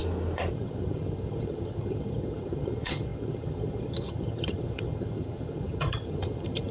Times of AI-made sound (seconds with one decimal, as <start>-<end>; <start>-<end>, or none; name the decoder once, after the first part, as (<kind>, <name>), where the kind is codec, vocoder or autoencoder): 0.5-6.7 (vocoder, HiFi-GAN)